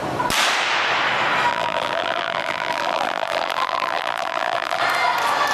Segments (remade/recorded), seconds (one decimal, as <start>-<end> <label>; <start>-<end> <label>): 0.0-1.5 recorded; 1.5-4.8 remade; 4.8-5.5 recorded